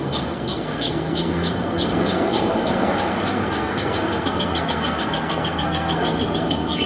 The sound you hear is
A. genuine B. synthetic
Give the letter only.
B